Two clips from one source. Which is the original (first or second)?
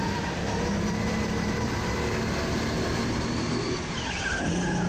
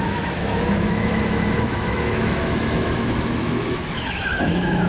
first